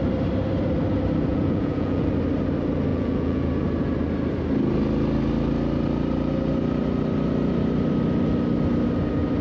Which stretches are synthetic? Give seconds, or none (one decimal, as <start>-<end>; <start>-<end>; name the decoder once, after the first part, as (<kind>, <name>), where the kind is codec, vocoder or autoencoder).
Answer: 1.3-2.1 (vocoder, Vocos); 2.9-3.5